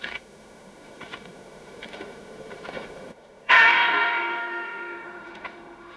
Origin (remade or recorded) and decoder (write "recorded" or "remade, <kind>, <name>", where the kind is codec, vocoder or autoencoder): remade, autoencoder, DAC-VAE